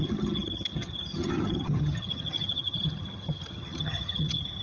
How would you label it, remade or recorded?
remade